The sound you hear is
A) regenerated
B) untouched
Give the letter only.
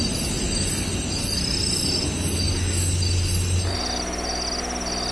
B